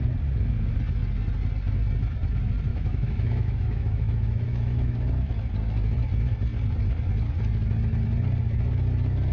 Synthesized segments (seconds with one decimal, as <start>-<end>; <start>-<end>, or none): 2.7-5.1

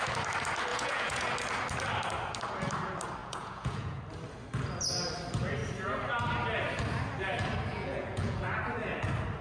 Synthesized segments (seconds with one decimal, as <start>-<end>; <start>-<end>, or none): 0.7-1.3; 3.2-4.0; 7.7-8.4

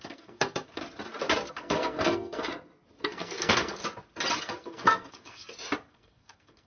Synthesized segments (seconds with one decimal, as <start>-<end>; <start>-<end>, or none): 0.0-0.8; 1.5-2.5; 3.0-3.8; 4.4-5.4; 5.9-6.7

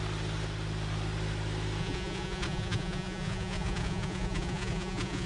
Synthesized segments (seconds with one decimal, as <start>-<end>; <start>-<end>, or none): 1.8-5.3

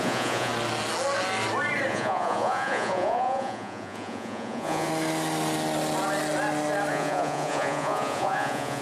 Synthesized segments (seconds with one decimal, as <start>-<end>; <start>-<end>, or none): 0.0-0.5; 1.9-4.9; 6.9-8.8

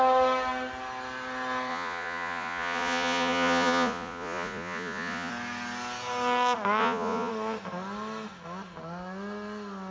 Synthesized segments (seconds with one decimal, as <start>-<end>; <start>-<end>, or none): 1.7-5.3; 6.8-7.3